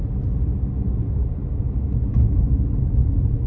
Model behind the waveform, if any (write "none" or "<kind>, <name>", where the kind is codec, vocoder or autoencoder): none